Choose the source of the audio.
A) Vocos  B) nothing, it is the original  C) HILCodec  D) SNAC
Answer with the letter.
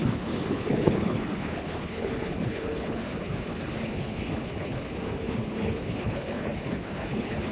C